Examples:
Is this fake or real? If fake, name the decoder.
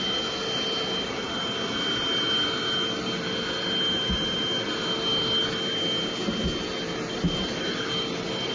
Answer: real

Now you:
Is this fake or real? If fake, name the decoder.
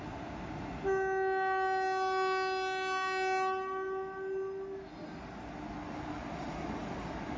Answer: real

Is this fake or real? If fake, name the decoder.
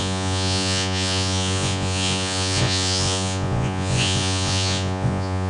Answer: fake, vocoder, Vocos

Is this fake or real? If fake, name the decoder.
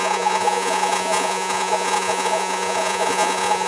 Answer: fake, vocoder, Vocos